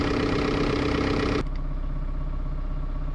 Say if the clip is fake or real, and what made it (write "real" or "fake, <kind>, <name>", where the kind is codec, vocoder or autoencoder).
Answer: real